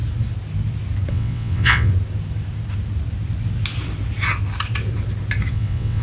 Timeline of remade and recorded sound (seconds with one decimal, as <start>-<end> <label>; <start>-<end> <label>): 0.0-1.1 recorded; 1.1-1.9 remade; 1.9-5.5 recorded; 5.5-6.0 remade

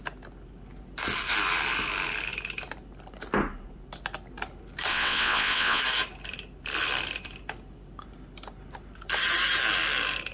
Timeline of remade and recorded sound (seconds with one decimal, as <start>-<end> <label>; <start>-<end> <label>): 0.0-4.9 recorded; 4.9-5.8 remade; 5.8-10.3 recorded

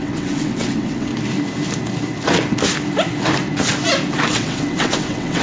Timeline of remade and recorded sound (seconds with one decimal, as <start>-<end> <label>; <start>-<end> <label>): 0.0-1.1 remade; 1.1-4.3 recorded; 4.3-5.4 remade